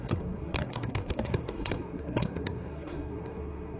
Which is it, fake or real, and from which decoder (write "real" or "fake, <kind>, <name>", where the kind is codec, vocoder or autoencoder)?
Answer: fake, codec, SNAC